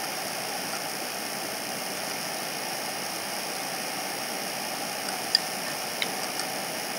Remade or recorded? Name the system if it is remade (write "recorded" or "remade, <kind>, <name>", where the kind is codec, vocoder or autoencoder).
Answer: recorded